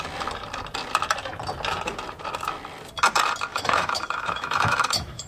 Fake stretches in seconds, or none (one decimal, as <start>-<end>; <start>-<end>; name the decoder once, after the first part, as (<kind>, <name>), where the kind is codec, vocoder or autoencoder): 3.5-5.3 (autoencoder, DAC-VAE)